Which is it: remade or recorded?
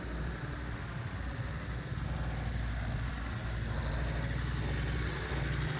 recorded